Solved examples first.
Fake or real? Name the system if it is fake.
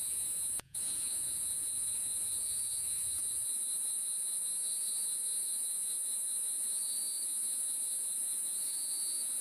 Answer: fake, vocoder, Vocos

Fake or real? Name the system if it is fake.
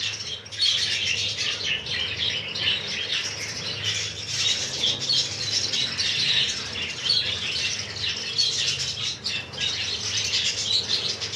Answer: real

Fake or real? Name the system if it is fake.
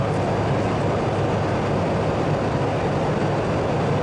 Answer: real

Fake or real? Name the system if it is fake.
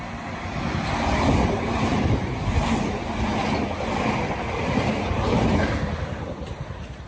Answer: real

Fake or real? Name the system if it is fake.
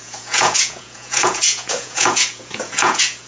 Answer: fake, vocoder, Vocos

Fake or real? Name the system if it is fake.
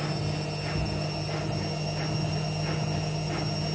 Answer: real